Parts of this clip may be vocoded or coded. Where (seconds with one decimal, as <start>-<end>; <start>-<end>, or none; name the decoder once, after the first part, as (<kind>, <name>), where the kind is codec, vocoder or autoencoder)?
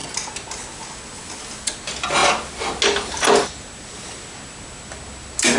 none